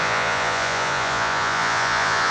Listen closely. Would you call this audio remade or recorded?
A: remade